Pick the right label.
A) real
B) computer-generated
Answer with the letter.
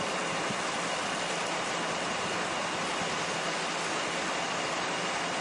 A